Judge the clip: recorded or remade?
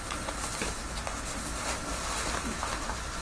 recorded